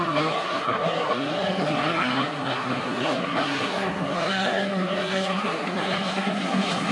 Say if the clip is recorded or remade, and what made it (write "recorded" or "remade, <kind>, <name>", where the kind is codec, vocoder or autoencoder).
remade, codec, SNAC